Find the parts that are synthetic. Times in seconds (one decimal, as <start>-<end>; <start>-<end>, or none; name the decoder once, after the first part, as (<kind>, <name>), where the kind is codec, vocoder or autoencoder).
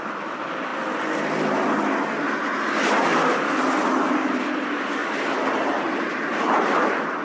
0.0-0.7 (vocoder, BigVGAN v2); 4.1-7.2